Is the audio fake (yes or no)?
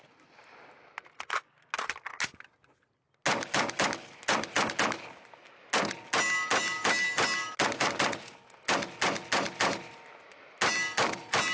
no